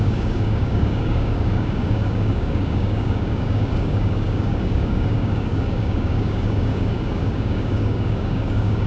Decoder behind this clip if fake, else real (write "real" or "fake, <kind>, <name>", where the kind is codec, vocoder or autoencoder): fake, codec, DAC